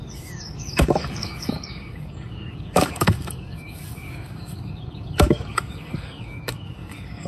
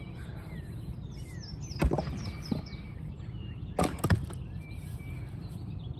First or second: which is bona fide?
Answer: second